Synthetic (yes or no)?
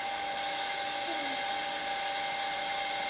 no